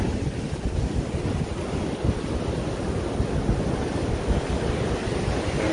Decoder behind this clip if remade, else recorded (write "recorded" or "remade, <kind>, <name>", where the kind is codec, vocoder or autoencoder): recorded